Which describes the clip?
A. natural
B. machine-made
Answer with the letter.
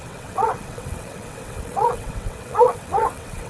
B